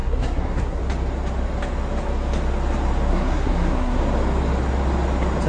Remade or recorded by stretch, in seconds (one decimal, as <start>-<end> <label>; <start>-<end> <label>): 0.0-0.8 remade; 0.8-3.1 recorded; 3.1-4.0 remade; 4.0-5.5 recorded